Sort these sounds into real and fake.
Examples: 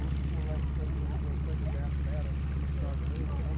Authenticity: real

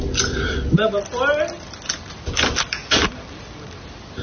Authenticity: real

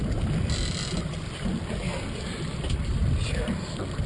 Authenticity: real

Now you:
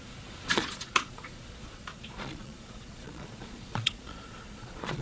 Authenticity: fake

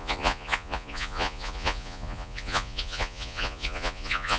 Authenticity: fake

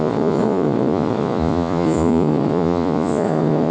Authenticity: fake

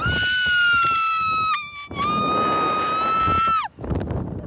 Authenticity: real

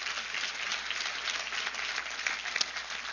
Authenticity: real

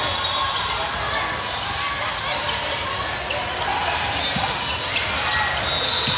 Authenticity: real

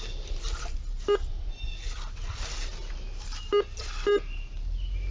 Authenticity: real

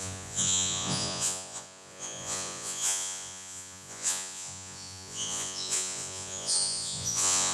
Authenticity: fake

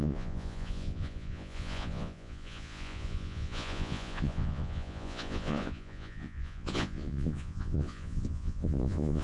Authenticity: fake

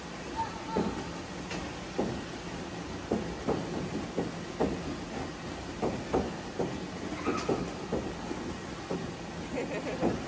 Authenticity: real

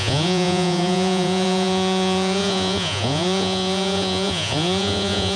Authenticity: fake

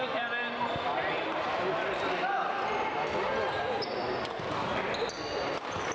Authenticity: real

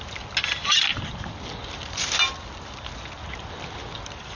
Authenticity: real